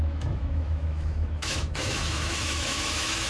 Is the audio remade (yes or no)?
yes